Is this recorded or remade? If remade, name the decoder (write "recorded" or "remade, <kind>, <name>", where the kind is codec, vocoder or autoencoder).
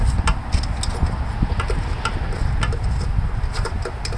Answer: recorded